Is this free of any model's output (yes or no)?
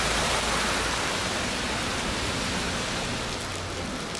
yes